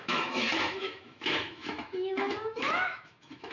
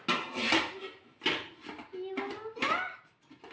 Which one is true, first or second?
second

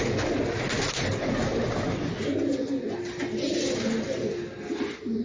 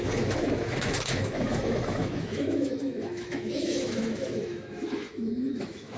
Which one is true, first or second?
first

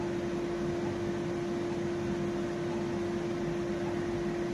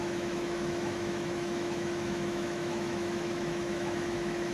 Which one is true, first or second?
first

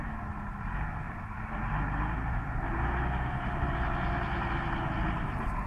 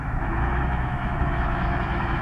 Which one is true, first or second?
first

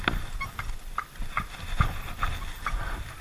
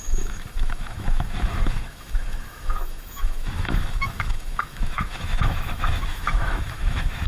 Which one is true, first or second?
first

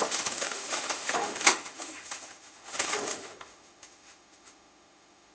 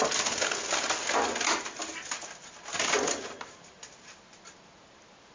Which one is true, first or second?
second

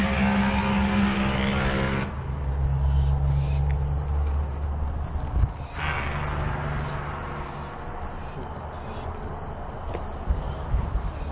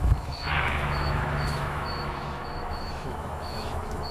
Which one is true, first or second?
first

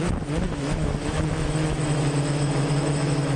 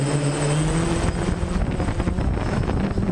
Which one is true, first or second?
second